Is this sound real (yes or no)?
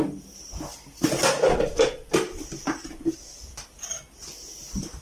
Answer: yes